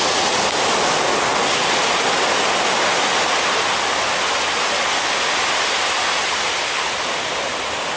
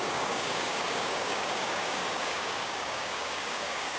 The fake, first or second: second